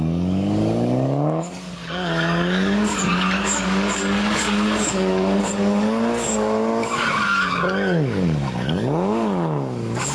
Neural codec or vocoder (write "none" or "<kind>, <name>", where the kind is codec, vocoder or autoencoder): codec, DAC